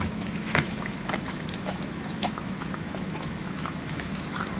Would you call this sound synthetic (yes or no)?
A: yes